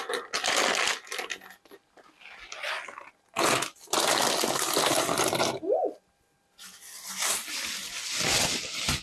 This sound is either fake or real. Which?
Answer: real